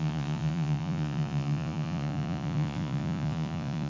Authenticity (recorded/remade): remade